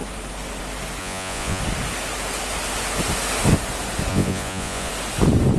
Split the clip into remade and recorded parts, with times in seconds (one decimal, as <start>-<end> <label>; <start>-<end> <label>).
0.0-1.0 recorded; 1.0-1.6 remade; 1.6-4.1 recorded; 4.1-4.9 remade; 4.9-5.6 recorded